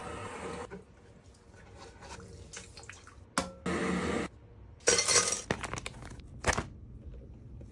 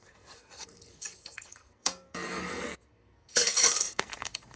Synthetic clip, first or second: second